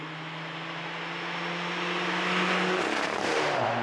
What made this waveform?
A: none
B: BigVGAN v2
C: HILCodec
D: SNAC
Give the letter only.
A